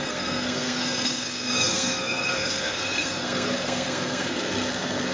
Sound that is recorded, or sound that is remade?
remade